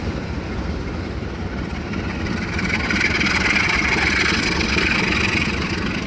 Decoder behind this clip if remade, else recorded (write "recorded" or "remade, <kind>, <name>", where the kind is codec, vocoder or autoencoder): recorded